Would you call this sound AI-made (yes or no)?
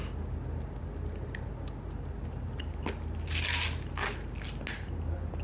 no